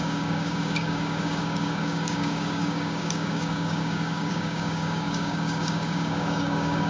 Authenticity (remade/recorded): remade